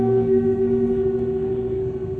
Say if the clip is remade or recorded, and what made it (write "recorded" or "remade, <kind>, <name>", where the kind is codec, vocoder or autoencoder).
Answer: remade, codec, SNAC